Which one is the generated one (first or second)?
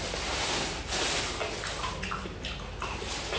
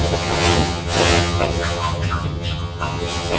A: second